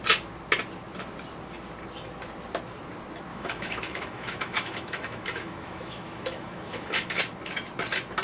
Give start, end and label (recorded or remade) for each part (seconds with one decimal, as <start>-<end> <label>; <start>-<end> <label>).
0.0-3.3 recorded; 3.3-7.2 remade; 7.2-8.2 recorded